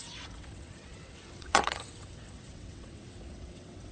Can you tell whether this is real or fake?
fake